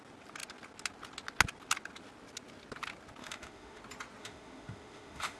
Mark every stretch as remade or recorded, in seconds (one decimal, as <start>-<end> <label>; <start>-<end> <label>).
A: 0.0-3.2 recorded; 3.2-3.8 remade; 3.8-4.2 recorded; 4.2-5.4 remade